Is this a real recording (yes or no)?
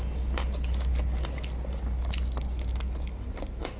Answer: yes